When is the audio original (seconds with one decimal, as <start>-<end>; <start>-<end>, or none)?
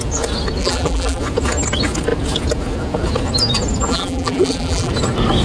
0.0-0.6; 1.2-3.9; 4.9-5.4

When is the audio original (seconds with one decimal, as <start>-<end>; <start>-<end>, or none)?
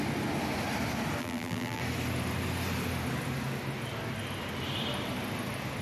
0.0-1.2; 1.8-5.8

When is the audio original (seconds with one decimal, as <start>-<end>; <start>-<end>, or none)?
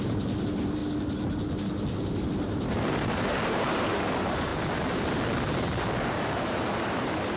0.8-2.3; 4.5-6.1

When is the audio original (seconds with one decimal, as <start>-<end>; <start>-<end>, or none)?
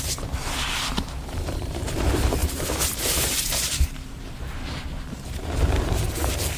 none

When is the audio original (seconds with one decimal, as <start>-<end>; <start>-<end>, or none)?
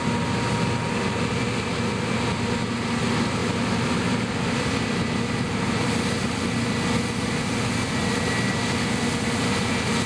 0.0-3.4; 5.9-10.1